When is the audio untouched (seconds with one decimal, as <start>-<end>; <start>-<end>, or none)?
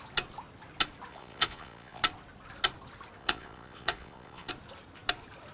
0.0-1.1; 2.0-3.2; 4.5-5.5